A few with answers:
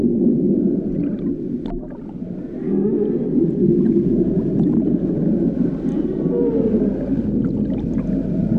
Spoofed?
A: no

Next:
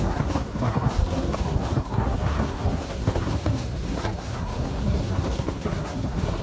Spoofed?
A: yes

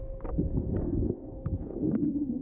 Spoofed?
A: yes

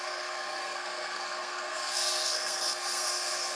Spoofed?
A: yes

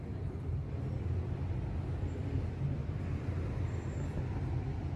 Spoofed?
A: no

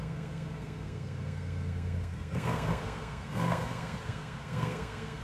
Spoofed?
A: yes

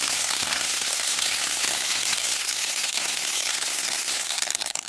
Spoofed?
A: yes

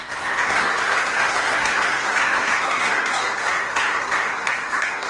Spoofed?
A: yes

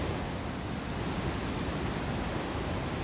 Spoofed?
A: no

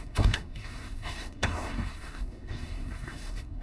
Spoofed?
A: yes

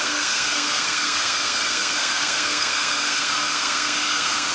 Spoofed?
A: yes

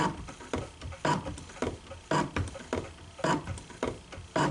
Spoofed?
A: no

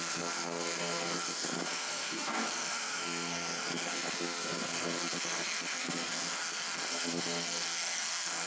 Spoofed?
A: yes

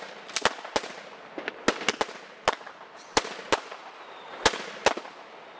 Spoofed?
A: no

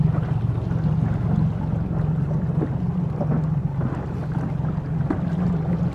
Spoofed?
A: no